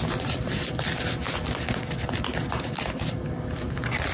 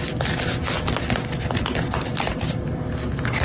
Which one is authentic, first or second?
second